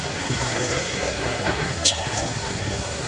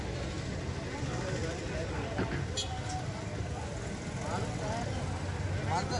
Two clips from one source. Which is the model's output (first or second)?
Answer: first